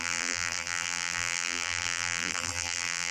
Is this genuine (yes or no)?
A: no